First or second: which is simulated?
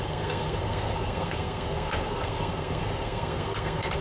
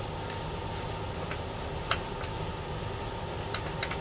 first